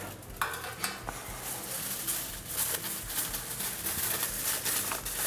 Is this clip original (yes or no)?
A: yes